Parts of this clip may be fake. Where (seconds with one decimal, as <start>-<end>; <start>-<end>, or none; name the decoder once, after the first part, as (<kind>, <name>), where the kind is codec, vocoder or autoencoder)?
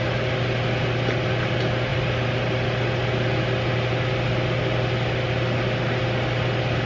none